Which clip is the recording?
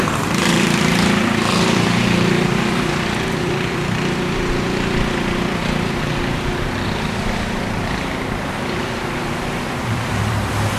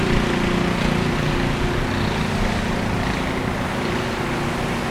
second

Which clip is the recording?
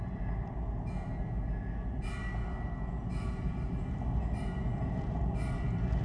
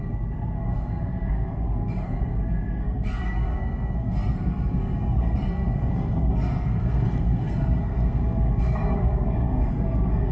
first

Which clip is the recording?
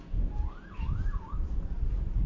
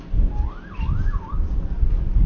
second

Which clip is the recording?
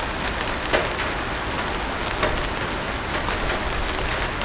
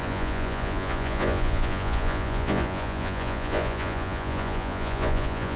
first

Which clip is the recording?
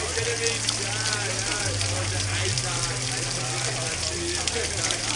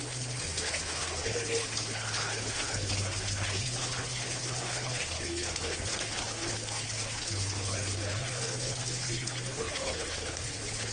first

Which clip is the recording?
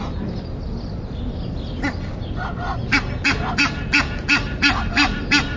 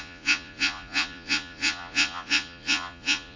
first